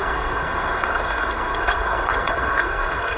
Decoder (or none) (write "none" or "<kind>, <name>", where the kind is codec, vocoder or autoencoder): codec, SNAC